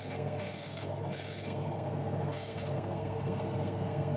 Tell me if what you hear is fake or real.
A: fake